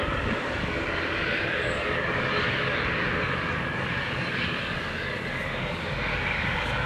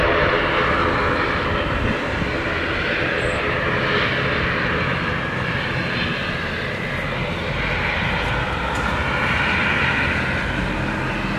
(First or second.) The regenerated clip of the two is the first